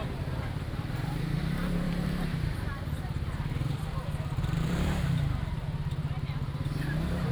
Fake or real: fake